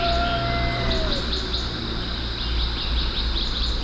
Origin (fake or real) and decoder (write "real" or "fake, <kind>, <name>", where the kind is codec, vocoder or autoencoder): real